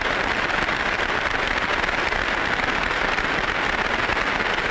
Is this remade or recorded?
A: recorded